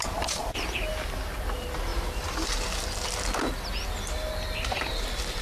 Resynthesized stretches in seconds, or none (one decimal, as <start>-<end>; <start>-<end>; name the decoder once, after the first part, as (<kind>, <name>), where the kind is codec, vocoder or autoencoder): none